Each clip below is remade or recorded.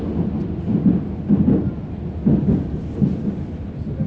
recorded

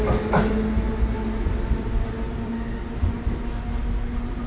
recorded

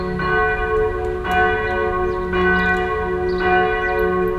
recorded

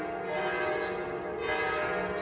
recorded